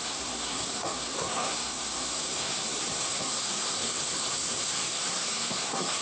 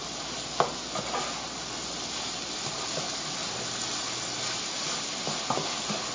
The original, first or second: second